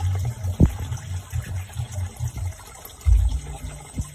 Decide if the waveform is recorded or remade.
recorded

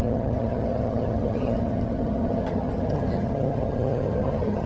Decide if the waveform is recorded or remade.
remade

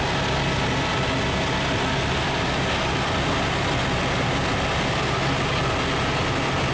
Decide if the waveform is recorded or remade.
recorded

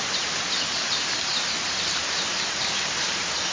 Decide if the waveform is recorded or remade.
recorded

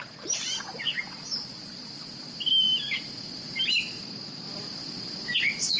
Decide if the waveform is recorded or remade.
recorded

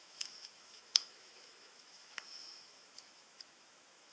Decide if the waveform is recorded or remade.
remade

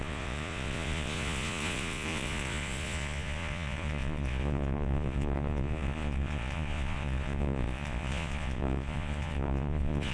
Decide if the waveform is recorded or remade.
remade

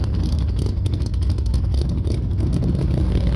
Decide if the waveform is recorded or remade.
remade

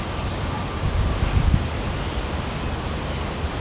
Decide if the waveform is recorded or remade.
recorded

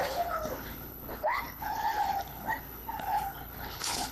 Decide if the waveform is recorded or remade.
remade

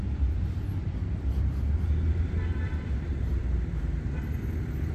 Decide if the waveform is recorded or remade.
remade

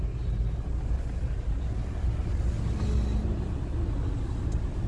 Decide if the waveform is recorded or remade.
recorded